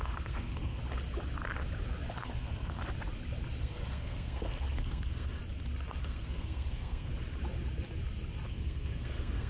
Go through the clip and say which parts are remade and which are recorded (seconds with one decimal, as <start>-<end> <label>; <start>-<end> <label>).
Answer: 0.0-0.8 remade; 0.8-2.2 recorded; 2.2-2.8 remade; 2.8-3.6 recorded; 3.6-5.4 remade; 5.4-6.0 recorded; 6.0-7.1 remade; 7.1-8.5 recorded; 8.5-9.5 remade